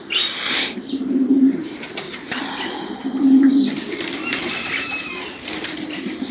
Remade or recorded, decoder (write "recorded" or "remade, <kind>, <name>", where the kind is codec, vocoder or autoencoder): remade, vocoder, BigVGAN v2